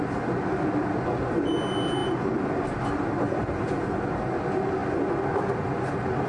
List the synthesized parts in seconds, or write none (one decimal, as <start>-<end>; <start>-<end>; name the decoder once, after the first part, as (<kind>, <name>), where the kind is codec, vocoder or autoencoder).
none